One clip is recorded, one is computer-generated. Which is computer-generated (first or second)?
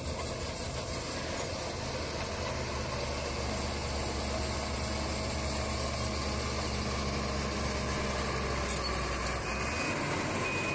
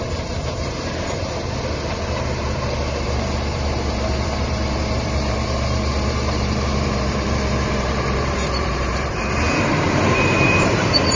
second